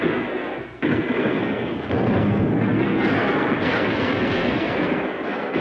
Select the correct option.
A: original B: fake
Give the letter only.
B